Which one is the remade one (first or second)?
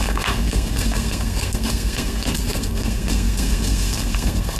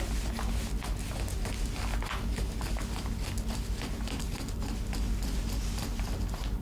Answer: first